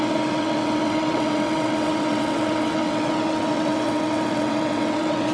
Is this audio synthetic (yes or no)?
yes